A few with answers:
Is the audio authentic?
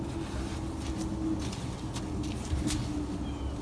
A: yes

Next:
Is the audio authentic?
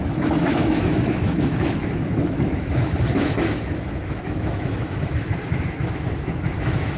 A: no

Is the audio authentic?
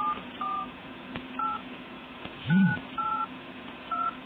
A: no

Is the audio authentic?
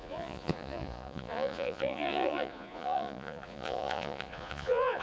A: no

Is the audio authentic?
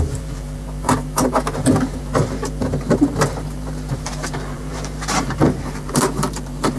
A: no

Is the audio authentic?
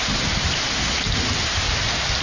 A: yes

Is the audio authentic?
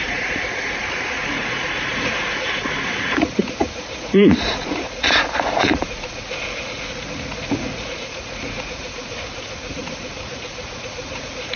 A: no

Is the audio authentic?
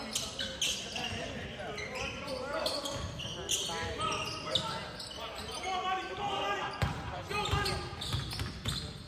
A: yes